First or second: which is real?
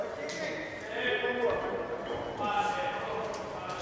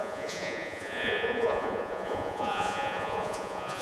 first